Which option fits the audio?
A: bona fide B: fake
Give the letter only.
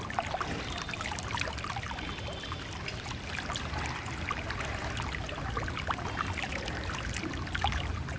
A